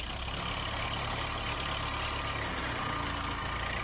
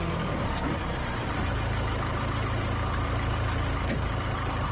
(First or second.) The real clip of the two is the first